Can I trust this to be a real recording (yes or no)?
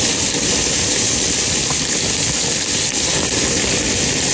no